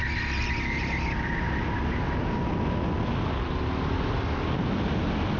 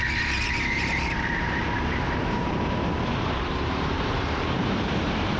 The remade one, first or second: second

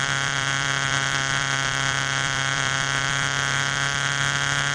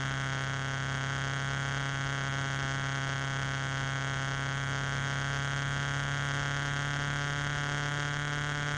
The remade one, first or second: first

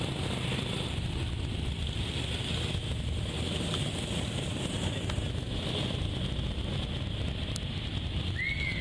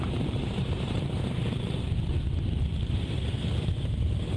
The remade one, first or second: second